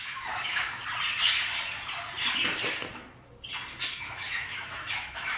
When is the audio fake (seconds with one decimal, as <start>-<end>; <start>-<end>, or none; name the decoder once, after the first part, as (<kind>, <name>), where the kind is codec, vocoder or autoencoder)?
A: 0.0-0.8 (autoencoder, DAC-VAE); 4.0-5.4